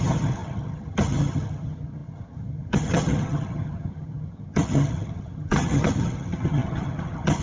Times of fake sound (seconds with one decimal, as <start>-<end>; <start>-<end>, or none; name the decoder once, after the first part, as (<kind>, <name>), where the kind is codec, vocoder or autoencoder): 0.0-7.4 (vocoder, HiFi-GAN)